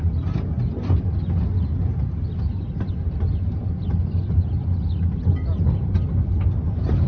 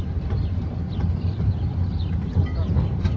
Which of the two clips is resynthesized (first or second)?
second